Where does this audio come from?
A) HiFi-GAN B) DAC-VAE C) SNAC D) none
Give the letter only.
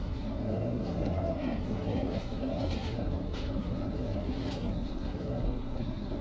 C